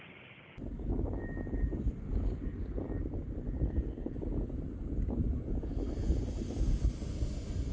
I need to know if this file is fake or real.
real